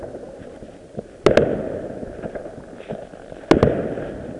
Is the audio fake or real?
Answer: real